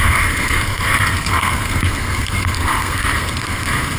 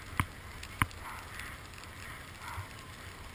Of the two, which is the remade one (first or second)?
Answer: first